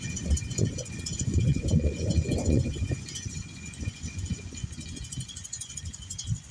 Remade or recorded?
remade